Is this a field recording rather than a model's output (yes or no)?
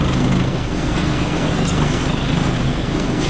no